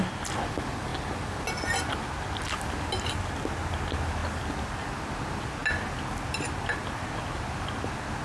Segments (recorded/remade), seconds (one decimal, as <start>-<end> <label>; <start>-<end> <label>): 0.0-8.2 recorded